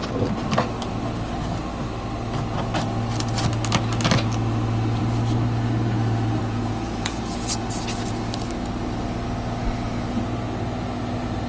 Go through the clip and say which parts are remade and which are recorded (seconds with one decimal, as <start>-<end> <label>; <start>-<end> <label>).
0.0-6.4 recorded; 6.4-7.7 remade; 7.7-11.5 recorded